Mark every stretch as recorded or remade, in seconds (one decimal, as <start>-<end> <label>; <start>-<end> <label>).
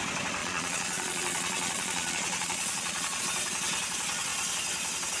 0.0-0.4 recorded; 0.4-3.2 remade; 3.2-5.2 recorded